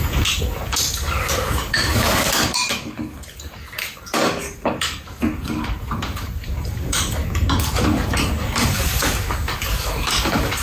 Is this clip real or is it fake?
fake